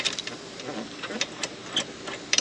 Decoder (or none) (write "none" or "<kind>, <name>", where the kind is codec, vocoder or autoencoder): vocoder, BigVGAN v2